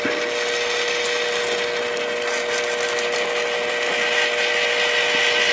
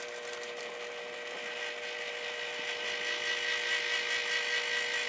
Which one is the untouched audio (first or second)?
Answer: first